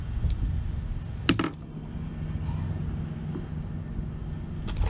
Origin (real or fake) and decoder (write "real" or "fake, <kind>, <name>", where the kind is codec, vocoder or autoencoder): real